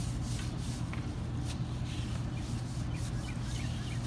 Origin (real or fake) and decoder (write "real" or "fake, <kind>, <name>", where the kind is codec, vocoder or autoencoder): real